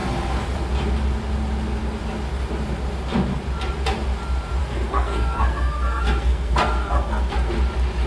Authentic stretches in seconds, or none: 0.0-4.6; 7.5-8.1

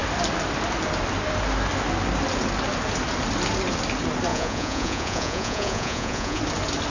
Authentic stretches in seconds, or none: 0.0-4.3; 6.4-6.9

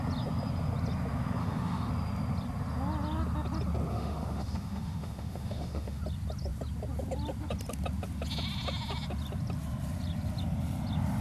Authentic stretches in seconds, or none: 0.0-1.4; 1.9-3.9; 6.0-11.2

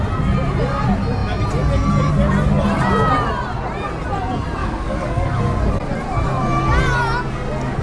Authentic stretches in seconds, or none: 0.0-4.6; 5.4-7.8

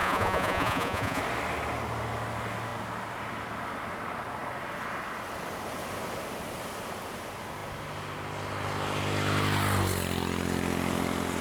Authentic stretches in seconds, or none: 1.2-11.4

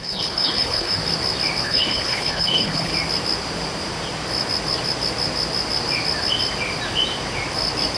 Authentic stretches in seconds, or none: 1.0-1.6; 2.9-8.0